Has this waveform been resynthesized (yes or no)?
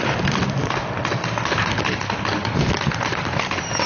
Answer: no